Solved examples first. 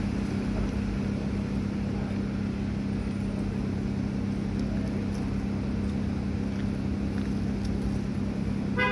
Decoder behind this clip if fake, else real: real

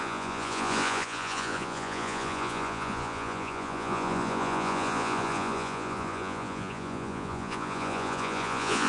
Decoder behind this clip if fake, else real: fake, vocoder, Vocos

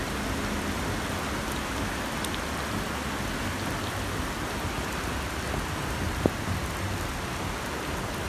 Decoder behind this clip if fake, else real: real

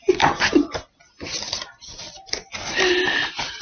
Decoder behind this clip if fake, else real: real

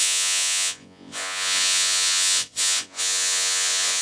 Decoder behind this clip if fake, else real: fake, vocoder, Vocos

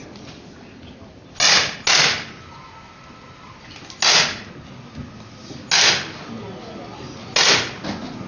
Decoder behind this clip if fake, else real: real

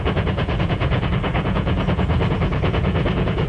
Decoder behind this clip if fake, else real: fake, vocoder, Vocos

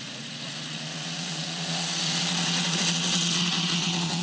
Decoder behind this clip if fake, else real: fake, vocoder, Vocos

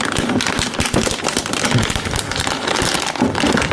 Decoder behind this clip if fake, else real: real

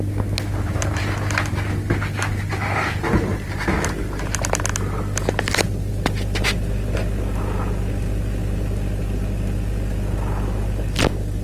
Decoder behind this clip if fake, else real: real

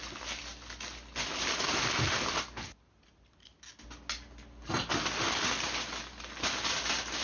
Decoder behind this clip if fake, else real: real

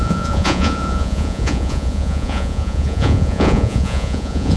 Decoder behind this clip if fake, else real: fake, vocoder, Vocos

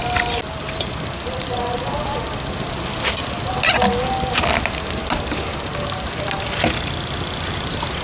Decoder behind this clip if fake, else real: real